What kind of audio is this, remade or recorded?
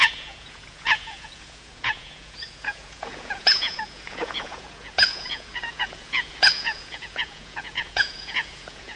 remade